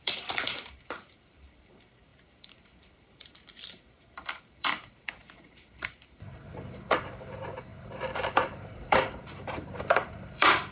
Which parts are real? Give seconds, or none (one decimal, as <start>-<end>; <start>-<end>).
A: none